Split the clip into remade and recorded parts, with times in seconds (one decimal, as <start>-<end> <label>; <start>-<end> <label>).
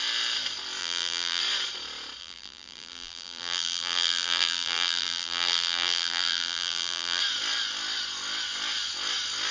0.0-0.8 recorded; 0.8-1.4 remade; 1.4-2.2 recorded; 2.2-7.2 remade; 7.2-9.5 recorded